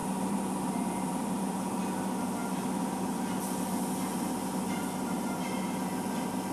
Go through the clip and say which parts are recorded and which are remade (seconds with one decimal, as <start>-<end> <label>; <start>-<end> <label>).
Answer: 0.0-1.8 remade; 1.8-6.5 recorded